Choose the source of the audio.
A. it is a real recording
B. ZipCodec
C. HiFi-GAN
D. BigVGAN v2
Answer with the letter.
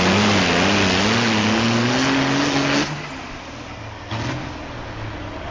A